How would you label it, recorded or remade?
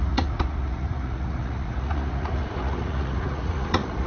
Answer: remade